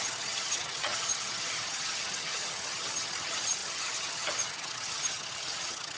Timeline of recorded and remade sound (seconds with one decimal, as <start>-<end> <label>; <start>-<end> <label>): 0.0-6.0 remade